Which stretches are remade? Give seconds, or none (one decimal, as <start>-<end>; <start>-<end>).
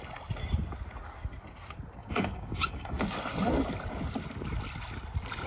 2.0-3.0